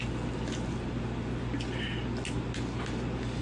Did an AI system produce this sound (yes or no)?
no